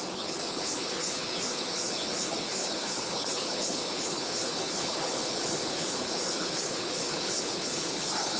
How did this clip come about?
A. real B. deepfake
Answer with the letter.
B